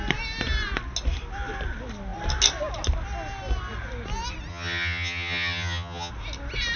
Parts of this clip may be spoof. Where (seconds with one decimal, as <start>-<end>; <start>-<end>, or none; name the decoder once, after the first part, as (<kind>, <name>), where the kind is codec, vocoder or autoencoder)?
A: 4.5-6.1 (vocoder, HiFi-GAN)